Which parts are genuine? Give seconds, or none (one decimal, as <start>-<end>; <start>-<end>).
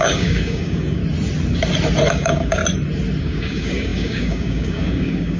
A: 1.0-2.1; 2.6-3.2